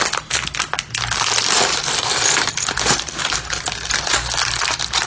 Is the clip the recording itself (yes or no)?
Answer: yes